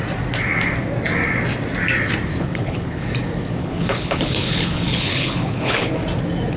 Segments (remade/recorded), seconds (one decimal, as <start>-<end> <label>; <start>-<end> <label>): 0.0-2.3 recorded; 2.3-3.1 remade; 3.1-3.6 recorded; 3.6-5.9 remade; 5.9-6.6 recorded